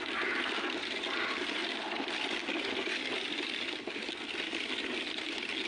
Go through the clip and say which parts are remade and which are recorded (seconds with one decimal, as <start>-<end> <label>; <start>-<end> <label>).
0.0-5.7 recorded